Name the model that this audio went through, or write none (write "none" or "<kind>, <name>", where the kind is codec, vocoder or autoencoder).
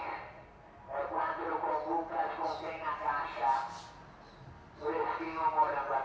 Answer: none